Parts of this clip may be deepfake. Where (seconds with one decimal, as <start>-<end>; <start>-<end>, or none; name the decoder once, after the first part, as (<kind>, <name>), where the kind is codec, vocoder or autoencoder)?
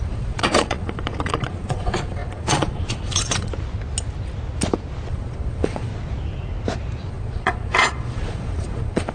0.0-3.5 (vocoder, Vocos); 5.1-5.9; 7.1-9.1